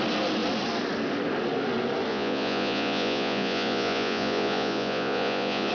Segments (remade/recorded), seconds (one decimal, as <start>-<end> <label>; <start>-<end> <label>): 0.0-2.1 recorded; 2.1-5.7 remade